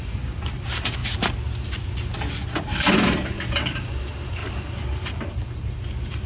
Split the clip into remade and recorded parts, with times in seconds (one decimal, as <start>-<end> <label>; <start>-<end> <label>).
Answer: 0.0-1.0 remade; 1.0-2.6 recorded; 2.6-6.3 remade